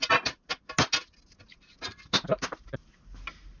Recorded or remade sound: recorded